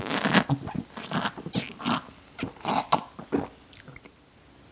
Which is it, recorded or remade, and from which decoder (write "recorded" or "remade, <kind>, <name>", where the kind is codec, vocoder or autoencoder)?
recorded